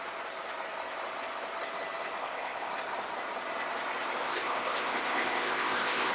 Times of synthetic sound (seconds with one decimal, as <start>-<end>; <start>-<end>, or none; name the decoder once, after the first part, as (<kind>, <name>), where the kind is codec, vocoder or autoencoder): 2.2-2.7 (codec, ZipCodec); 4.2-6.1